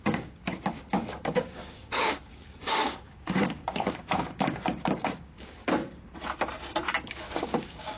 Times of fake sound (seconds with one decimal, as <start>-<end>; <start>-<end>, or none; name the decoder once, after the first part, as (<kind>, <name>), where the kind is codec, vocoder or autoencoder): 0.0-5.6 (codec, DAC); 7.1-8.0